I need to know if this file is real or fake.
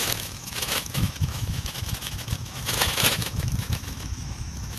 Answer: fake